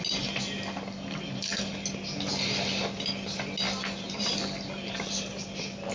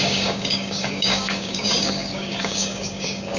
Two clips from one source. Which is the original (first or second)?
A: first